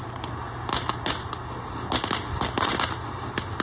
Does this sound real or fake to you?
real